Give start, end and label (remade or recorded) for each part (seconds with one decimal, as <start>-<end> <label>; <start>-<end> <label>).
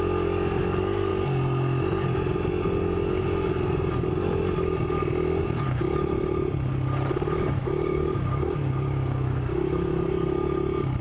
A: 0.0-7.6 recorded; 7.6-9.9 remade; 9.9-11.0 recorded